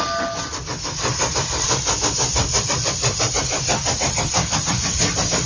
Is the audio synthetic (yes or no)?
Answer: no